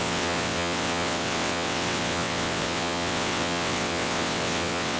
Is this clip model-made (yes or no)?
yes